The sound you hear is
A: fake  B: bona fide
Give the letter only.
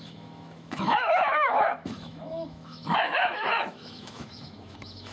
A